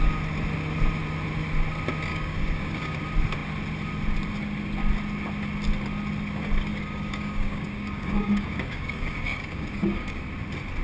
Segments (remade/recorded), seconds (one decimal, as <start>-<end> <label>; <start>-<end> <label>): 0.0-2.1 recorded; 2.1-3.0 remade; 3.0-6.7 recorded; 6.7-10.2 remade; 10.2-10.8 recorded

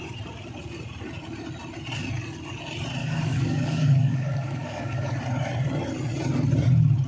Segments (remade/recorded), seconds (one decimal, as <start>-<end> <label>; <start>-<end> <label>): 0.0-3.0 recorded; 3.0-5.2 remade; 5.2-7.1 recorded